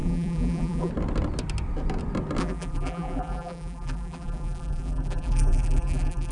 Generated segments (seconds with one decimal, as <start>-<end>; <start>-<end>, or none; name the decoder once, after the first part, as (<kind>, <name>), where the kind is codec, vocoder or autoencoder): 0.0-0.9 (vocoder, BigVGAN v2); 2.4-6.3